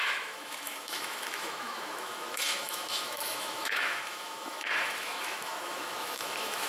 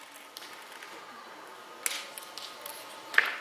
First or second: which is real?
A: second